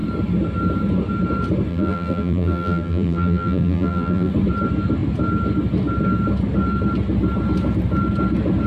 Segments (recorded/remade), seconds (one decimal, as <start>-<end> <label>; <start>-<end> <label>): 0.0-1.7 recorded; 1.7-4.3 remade; 4.3-8.7 recorded